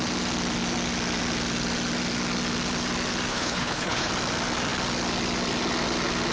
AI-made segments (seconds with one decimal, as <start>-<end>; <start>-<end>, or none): 3.3-4.1